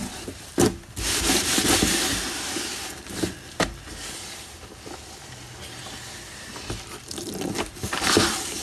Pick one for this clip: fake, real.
real